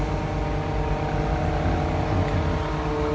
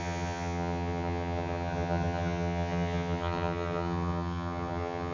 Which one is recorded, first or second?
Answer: first